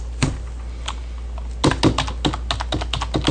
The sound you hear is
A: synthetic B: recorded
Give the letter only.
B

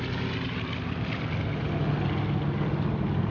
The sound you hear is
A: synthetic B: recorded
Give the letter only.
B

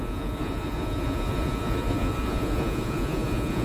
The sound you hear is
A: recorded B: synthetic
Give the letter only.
B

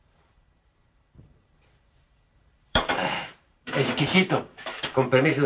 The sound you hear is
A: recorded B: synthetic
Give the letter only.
B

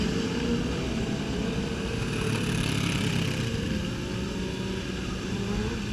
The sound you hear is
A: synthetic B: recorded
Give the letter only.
B